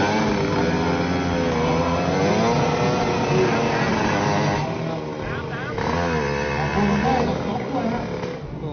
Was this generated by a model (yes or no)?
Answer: no